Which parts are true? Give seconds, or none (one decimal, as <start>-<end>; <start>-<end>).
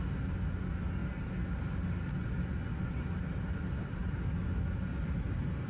0.0-5.7